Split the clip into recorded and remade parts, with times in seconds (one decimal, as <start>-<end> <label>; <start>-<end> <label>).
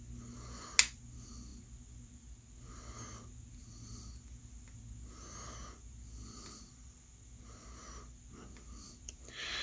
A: 0.0-9.6 recorded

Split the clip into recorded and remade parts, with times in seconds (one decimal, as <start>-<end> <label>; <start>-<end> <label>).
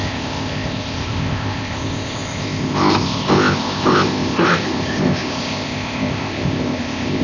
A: 0.0-7.2 remade